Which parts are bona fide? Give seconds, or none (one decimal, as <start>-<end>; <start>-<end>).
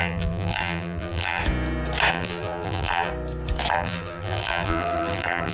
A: 1.4-2.1; 3.1-3.7